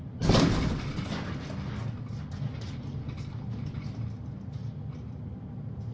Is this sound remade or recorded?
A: recorded